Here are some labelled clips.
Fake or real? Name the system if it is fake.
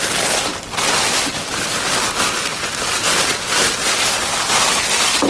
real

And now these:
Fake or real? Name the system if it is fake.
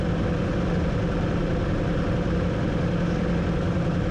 real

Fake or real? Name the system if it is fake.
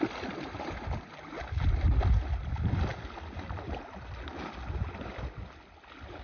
real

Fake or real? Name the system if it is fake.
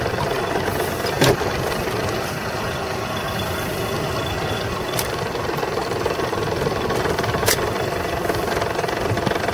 real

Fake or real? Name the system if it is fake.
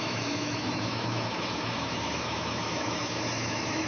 fake, autoencoder, DAC-VAE